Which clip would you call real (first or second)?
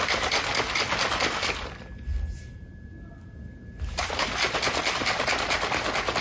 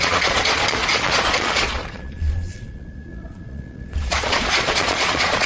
first